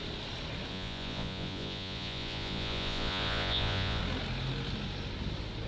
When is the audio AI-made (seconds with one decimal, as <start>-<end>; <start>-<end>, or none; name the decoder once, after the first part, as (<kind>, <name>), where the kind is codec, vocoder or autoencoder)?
0.7-4.0 (vocoder, Vocos)